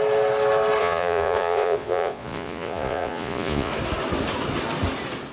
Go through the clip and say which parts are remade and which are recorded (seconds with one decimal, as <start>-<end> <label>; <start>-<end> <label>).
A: 0.0-0.8 recorded; 0.8-3.7 remade; 3.7-5.3 recorded